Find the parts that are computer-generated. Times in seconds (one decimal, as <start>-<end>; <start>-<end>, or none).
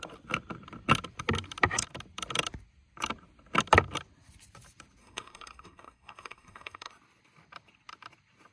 5.0-6.9